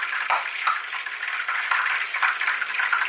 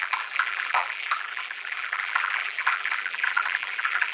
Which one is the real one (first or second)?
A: first